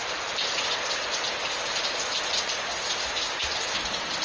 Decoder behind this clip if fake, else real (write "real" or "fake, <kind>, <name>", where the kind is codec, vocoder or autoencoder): real